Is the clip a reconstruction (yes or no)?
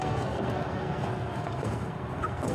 yes